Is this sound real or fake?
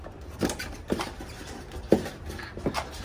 fake